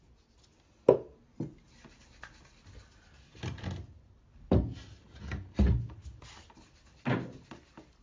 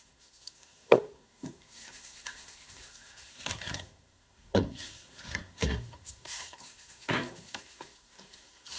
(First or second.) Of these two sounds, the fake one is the second